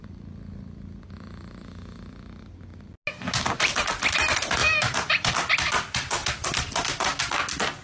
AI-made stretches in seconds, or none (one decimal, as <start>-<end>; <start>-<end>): 4.6-5.3